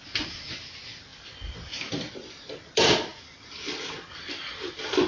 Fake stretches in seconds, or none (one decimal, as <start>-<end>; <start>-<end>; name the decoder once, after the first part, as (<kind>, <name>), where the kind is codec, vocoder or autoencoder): none